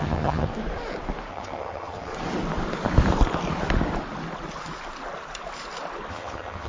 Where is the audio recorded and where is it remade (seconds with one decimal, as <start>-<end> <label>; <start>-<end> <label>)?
0.0-0.5 remade; 0.5-1.3 recorded; 1.3-2.1 remade; 2.1-6.1 recorded; 6.1-6.7 remade